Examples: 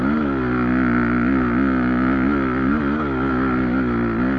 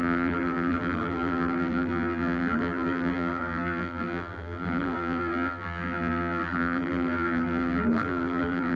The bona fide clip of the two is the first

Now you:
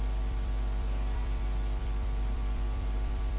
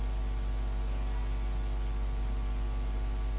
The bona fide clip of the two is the second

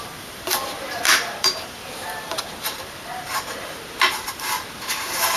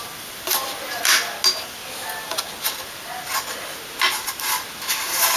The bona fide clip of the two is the second